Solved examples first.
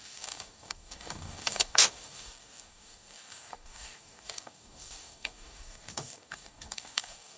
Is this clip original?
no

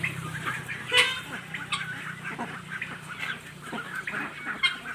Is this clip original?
yes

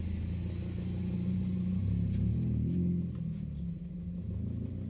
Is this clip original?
yes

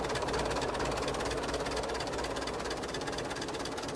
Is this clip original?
yes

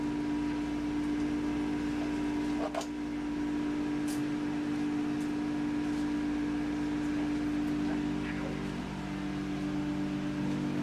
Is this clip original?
yes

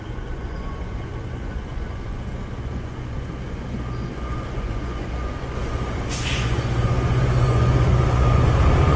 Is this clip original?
no